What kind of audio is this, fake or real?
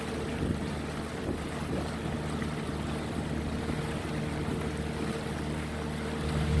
real